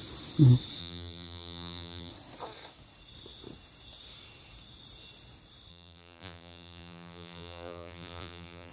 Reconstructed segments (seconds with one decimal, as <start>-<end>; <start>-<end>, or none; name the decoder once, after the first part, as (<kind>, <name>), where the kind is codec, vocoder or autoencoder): 0.8-2.1 (vocoder, BigVGAN v2); 5.7-8.7